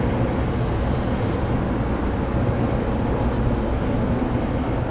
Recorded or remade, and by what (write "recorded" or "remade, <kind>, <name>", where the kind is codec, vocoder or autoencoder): recorded